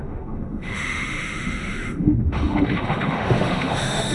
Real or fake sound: fake